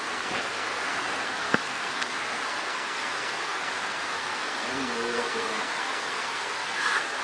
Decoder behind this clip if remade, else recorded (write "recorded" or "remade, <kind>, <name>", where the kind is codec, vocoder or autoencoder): remade, codec, SNAC